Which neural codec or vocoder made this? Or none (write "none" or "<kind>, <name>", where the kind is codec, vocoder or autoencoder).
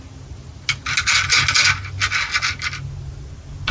none